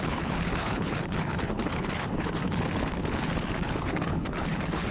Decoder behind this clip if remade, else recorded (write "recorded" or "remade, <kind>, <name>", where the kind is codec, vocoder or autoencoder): remade, codec, HILCodec